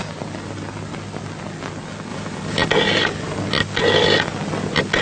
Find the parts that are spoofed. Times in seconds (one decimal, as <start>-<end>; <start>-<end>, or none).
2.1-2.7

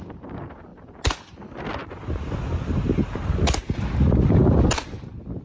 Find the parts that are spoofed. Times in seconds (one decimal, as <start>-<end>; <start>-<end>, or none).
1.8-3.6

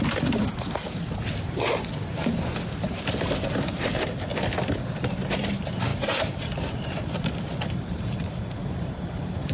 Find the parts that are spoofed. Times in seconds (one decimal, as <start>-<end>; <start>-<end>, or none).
0.0-4.3; 5.1-9.5

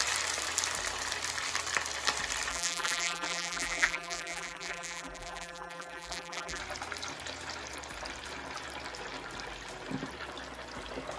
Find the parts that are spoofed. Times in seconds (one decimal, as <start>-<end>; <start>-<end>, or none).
2.5-6.6

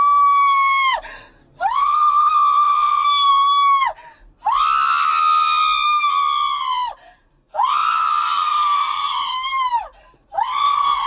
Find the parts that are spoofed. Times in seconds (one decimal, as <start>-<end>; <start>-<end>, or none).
7.8-11.1

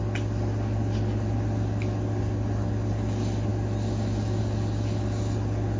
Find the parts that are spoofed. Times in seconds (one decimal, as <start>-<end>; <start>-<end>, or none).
none